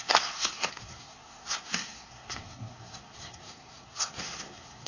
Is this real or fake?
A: fake